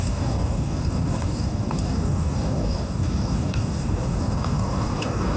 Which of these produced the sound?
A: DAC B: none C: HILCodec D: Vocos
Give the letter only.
A